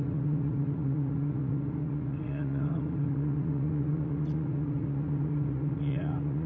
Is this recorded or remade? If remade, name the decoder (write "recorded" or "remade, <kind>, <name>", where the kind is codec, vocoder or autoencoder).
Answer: remade, vocoder, Vocos